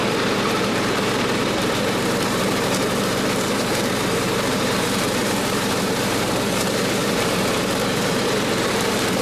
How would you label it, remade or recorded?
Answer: remade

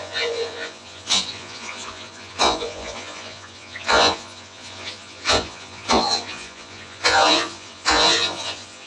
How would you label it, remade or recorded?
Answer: remade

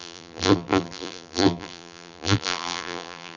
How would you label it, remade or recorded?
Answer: remade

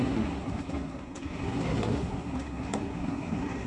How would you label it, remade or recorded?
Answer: remade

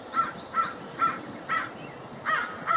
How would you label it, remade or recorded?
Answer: recorded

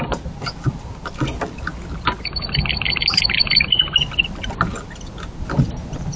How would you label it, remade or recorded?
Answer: recorded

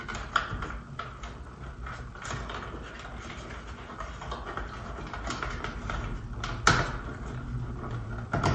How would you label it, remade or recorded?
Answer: recorded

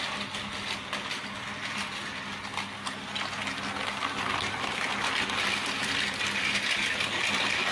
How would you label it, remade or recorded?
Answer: recorded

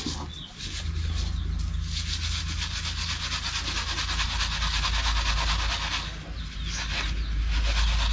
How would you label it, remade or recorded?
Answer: recorded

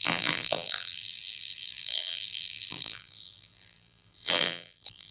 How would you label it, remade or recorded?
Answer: remade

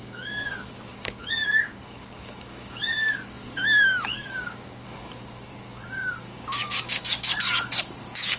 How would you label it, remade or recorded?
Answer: remade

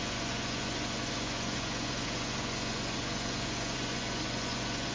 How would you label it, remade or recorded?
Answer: remade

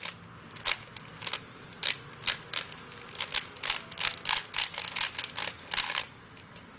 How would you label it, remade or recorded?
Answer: recorded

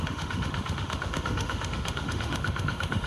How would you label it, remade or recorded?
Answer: remade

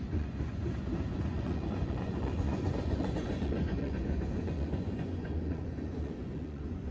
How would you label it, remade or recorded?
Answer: remade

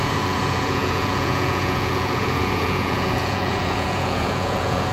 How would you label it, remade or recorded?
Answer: remade